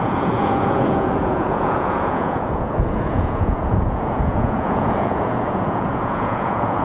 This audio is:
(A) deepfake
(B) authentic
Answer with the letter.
A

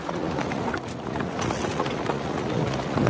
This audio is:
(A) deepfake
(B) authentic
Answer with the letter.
A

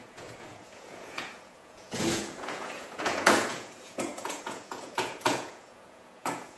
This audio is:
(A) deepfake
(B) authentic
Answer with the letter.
A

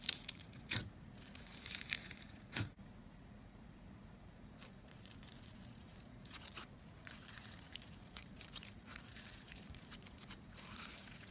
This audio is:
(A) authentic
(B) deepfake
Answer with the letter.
B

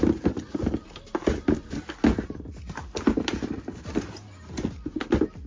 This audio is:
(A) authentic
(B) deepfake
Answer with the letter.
A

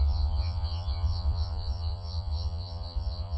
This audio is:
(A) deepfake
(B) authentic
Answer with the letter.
A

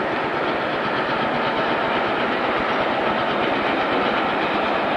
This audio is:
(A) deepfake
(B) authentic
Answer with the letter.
B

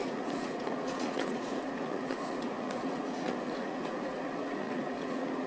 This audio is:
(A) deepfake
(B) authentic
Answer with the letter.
A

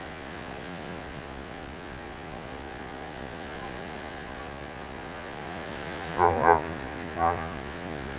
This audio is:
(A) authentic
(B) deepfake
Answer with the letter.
B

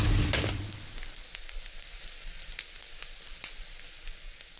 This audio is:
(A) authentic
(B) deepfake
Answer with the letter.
A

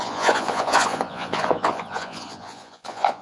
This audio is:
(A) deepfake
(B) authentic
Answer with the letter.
A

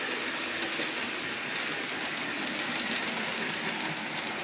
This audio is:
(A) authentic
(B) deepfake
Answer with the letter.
A